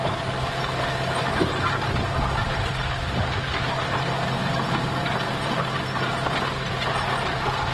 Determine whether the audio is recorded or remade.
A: recorded